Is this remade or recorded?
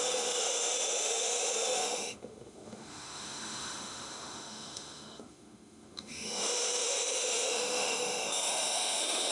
remade